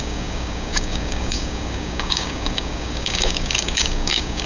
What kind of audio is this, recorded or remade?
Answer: remade